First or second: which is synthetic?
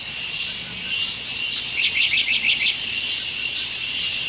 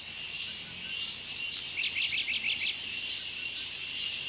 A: first